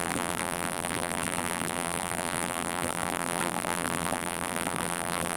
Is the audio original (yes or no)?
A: no